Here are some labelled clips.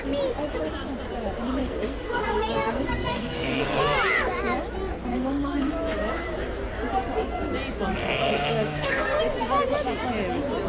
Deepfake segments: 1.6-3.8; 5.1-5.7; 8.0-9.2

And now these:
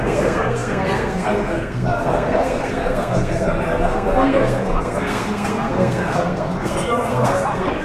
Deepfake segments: 0.0-7.8

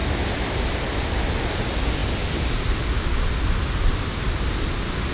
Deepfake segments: none

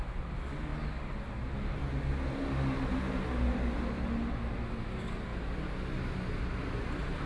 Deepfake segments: none

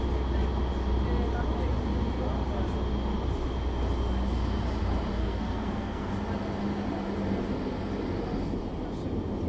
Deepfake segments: 5.2-6.1

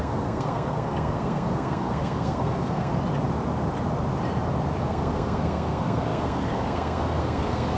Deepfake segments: 0.0-2.9; 4.8-7.8

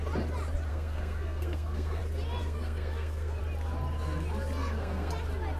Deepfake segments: 0.7-2.0; 2.4-3.4; 4.6-5.1

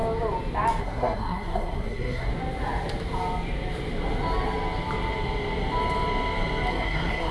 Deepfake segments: 0.8-2.3; 6.7-7.3